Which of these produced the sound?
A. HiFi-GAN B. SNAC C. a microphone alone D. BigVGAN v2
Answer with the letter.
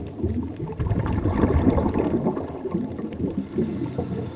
C